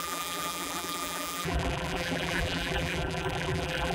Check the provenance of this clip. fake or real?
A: fake